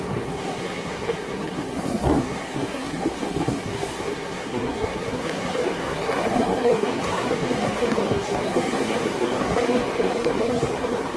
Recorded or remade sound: remade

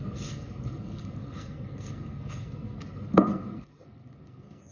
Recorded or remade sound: remade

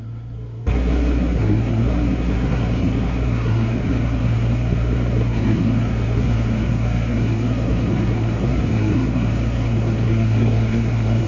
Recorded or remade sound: remade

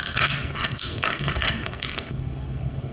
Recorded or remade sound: remade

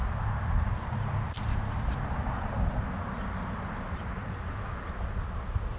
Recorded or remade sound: recorded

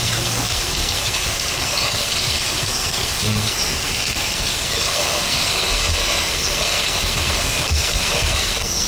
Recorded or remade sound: remade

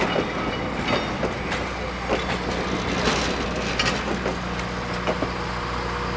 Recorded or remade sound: recorded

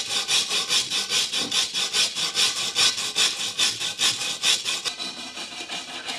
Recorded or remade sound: recorded